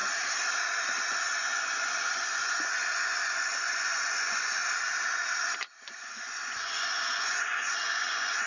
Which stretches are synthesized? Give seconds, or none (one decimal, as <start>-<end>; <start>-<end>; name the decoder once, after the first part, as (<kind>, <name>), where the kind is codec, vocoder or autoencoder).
1.0-4.6 (vocoder, Vocos); 5.8-8.5